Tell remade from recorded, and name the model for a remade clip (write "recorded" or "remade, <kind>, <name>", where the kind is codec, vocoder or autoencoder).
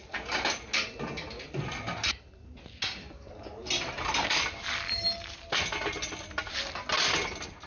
recorded